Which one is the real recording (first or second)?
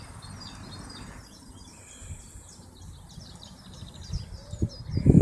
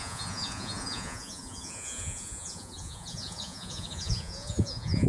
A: first